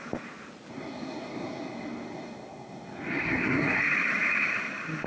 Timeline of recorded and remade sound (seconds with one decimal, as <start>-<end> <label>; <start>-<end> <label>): 0.0-0.7 recorded; 0.7-3.8 remade; 3.8-5.1 recorded

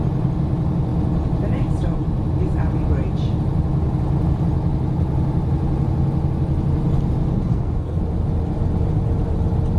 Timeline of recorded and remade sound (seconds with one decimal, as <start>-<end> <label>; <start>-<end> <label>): 0.0-7.5 recorded; 7.5-8.0 remade; 8.0-9.8 recorded

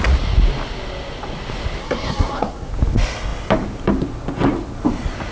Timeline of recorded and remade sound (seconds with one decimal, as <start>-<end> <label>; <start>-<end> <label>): 0.0-1.8 recorded; 1.8-2.7 remade; 2.7-5.3 recorded

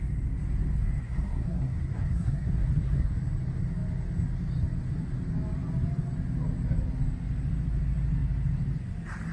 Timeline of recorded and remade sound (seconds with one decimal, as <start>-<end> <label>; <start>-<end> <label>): 0.0-1.0 recorded; 1.0-3.1 remade; 3.1-9.3 recorded